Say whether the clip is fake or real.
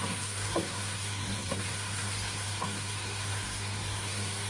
fake